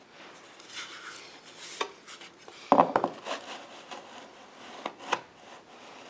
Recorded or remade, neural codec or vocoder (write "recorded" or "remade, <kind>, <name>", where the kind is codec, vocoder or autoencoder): recorded